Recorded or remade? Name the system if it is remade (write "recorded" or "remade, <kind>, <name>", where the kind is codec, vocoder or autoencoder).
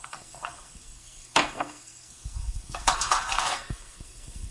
remade, codec, SNAC